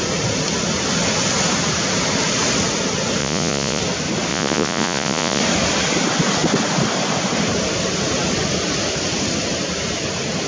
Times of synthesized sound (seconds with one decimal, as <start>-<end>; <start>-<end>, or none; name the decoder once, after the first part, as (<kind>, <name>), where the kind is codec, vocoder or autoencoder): 3.2-3.8 (vocoder, Vocos); 4.3-5.4